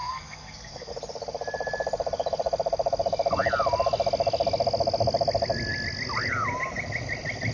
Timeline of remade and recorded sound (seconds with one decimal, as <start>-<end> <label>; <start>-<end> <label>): 0.0-0.9 remade; 0.9-7.5 recorded